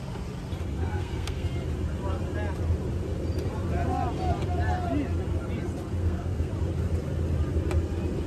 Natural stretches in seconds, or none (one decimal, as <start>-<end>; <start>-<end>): 0.0-0.8; 1.5-6.0; 6.5-8.3